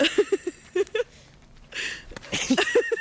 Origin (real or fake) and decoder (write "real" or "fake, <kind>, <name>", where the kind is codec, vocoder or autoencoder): fake, vocoder, BigVGAN v2